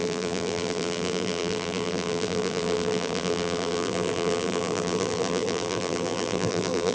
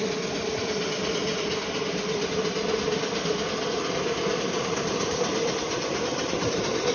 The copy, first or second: first